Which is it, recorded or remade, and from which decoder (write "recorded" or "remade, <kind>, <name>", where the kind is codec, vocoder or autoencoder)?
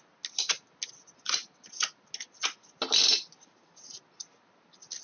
recorded